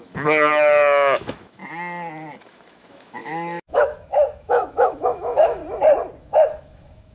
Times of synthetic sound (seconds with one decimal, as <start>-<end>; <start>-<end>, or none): 0.0-1.6; 2.4-5.6; 6.2-7.1